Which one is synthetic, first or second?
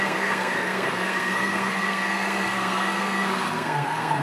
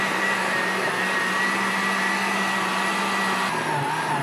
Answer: first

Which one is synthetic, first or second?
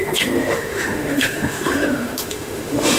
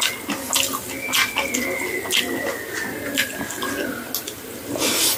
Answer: first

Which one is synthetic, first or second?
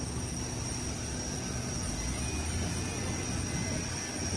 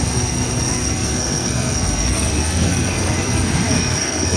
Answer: second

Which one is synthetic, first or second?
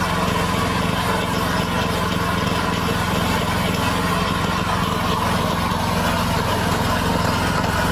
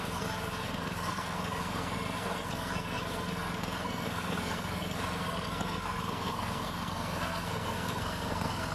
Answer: second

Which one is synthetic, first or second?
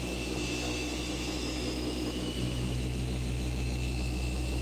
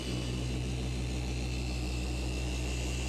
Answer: first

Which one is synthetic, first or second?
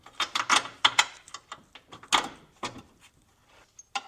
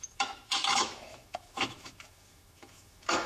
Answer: second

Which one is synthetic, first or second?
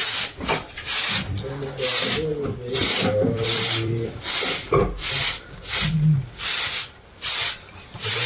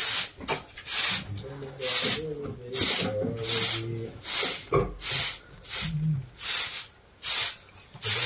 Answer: first